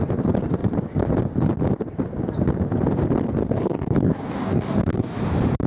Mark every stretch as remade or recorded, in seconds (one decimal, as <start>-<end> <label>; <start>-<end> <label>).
0.0-3.4 recorded; 3.4-5.2 remade; 5.2-5.7 recorded